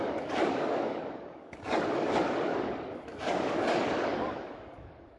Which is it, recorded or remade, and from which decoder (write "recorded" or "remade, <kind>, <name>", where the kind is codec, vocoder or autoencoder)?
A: remade, codec, DAC